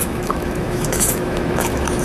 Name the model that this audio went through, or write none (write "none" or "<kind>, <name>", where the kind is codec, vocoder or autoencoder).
autoencoder, DAC-VAE